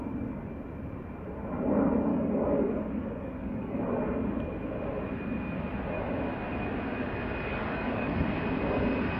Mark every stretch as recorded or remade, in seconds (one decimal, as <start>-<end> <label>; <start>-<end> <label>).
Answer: 0.0-2.1 recorded; 2.1-3.9 remade; 3.9-7.5 recorded; 7.5-8.3 remade; 8.3-9.2 recorded